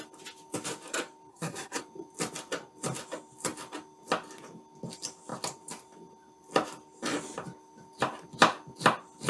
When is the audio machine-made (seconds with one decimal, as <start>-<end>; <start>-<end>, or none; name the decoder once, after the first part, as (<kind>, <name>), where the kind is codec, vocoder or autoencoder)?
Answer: 1.3-1.8 (codec, SNAC)